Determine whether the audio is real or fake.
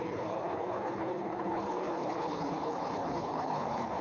fake